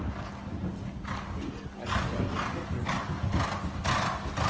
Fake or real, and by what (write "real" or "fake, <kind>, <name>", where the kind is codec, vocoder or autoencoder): real